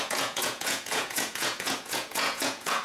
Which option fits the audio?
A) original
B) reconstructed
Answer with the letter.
B